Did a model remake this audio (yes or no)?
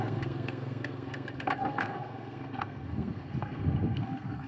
yes